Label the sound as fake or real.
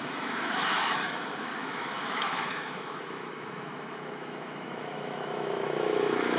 fake